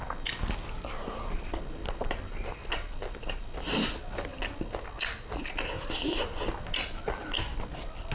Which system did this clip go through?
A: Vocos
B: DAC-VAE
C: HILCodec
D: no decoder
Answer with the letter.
D